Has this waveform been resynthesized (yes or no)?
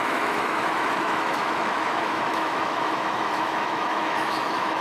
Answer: yes